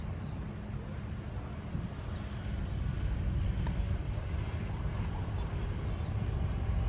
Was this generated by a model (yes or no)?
no